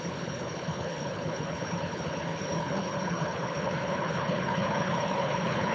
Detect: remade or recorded remade